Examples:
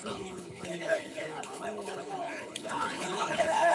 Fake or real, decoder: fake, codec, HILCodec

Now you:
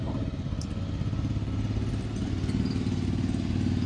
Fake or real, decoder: real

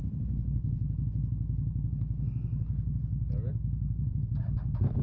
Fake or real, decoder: real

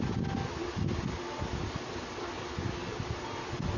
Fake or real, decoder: real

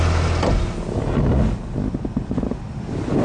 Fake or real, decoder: real